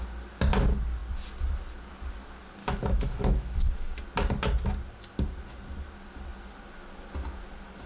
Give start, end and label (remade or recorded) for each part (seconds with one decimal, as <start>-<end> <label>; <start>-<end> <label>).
0.0-2.6 recorded; 2.6-4.0 remade; 4.0-7.9 recorded